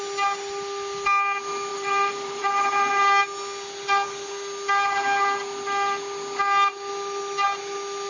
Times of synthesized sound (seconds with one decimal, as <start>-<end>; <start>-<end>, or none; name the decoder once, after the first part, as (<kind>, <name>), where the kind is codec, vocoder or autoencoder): 1.7-2.9 (vocoder, BigVGAN v2)